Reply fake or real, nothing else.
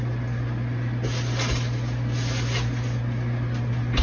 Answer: real